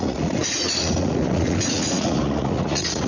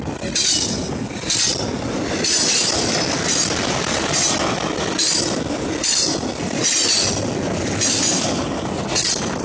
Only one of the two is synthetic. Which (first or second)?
first